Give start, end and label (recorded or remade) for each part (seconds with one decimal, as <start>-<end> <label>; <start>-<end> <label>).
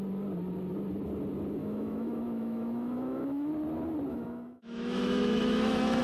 0.0-1.6 recorded; 1.6-3.5 remade; 3.5-4.1 recorded; 4.1-6.0 remade